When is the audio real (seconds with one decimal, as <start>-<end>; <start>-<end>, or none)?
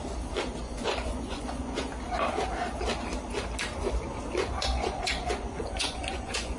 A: 0.0-0.6; 1.9-4.3